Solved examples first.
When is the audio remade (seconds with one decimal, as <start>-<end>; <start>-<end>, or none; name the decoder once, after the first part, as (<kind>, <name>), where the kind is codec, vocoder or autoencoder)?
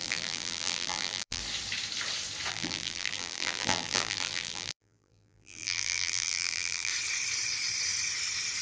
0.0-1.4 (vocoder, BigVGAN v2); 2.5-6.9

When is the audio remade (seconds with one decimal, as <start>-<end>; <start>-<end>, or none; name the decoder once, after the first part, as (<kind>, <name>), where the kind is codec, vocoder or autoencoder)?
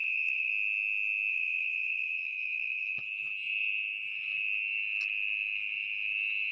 0.0-0.5 (vocoder, BigVGAN v2); 1.3-3.0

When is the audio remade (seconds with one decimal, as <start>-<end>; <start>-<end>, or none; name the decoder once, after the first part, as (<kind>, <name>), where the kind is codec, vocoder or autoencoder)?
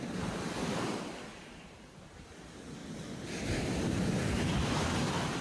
0.0-2.8 (vocoder, BigVGAN v2); 3.6-5.4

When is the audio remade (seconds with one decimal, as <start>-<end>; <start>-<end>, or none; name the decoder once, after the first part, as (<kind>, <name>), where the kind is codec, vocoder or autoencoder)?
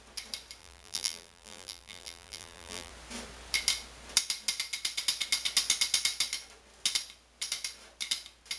0.6-2.9 (vocoder, BigVGAN v2)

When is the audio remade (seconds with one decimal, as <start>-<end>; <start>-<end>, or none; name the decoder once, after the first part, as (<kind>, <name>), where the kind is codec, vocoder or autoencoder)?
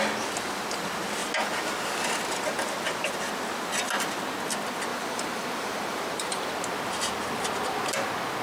4.9-6.5 (vocoder, BigVGAN v2)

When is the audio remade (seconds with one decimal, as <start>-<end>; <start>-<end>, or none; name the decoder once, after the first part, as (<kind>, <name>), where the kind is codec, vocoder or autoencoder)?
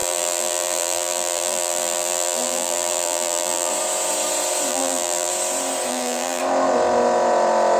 0.0-3.7 (vocoder, BigVGAN v2); 4.7-5.3; 5.9-6.4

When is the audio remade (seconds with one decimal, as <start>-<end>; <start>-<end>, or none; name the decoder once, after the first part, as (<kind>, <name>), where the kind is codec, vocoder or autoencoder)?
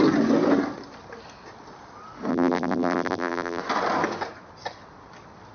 2.3-3.6 (vocoder, BigVGAN v2)